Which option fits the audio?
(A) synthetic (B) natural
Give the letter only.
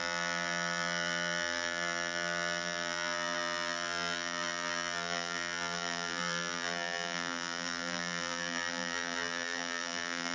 A